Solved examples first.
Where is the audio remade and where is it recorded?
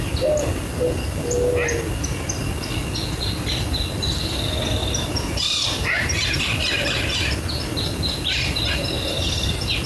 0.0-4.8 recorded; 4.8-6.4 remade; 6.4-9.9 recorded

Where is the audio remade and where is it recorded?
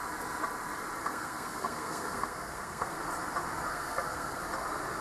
0.0-1.0 recorded; 1.0-3.0 remade; 3.0-3.7 recorded; 3.7-4.4 remade; 4.4-5.0 recorded